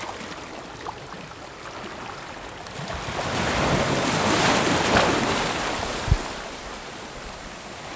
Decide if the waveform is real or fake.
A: real